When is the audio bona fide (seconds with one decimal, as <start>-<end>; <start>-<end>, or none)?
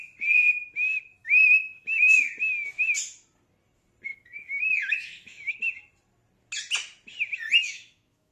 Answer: 0.0-1.2; 2.3-4.1; 5.5-7.6